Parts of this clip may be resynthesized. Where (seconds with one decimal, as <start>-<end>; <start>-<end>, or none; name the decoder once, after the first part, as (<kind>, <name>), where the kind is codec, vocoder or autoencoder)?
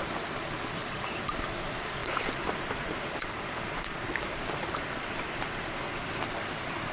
2.0-5.5 (vocoder, BigVGAN v2)